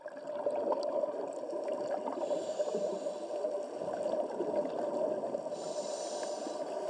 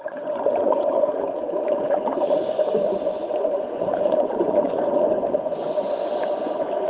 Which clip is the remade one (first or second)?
second